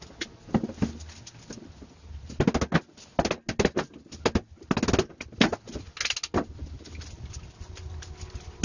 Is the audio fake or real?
real